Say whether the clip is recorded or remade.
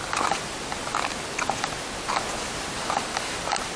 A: recorded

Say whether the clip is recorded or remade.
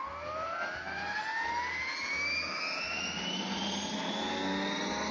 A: recorded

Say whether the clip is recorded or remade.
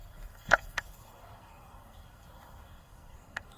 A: remade